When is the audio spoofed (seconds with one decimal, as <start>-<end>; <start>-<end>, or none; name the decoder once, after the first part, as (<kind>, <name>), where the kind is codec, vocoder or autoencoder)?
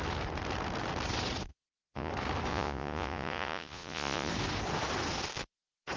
1.5-2.1 (vocoder, Vocos); 2.5-4.3